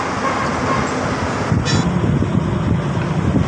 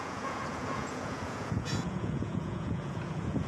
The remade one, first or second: second